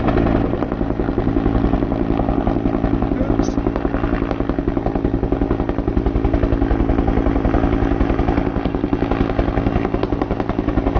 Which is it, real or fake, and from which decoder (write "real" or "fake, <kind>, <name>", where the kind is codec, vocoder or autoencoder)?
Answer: real